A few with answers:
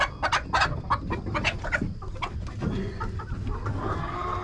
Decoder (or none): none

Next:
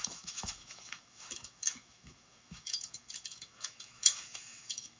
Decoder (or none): autoencoder, DAC-VAE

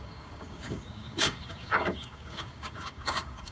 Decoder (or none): codec, DAC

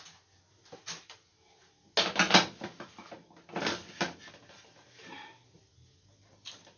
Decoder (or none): none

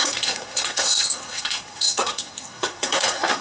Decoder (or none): codec, SNAC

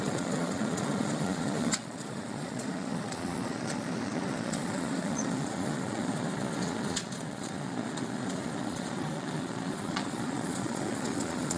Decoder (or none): vocoder, Vocos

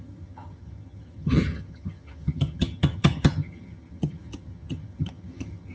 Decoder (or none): vocoder, HiFi-GAN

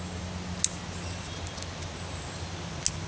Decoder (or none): none